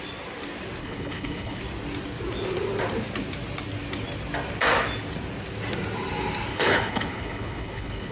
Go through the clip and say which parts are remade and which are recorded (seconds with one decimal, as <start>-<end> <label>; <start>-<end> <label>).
0.0-0.8 recorded; 0.8-1.6 remade; 1.6-6.5 recorded; 6.5-8.1 remade